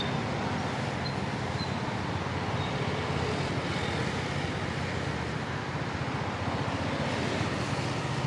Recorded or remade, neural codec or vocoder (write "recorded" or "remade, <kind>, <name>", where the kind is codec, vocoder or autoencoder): recorded